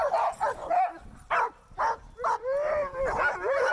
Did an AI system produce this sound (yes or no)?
no